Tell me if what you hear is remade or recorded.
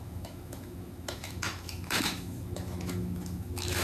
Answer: remade